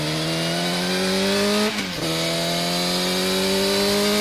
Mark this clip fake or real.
real